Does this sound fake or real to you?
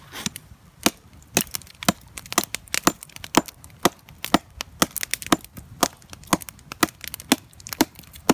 real